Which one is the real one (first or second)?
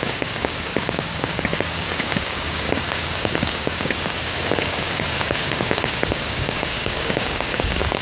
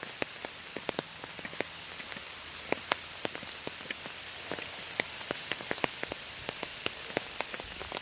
second